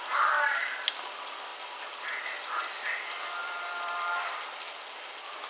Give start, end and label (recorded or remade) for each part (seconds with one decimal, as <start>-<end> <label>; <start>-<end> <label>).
0.0-3.4 recorded; 3.4-4.8 remade; 4.8-5.5 recorded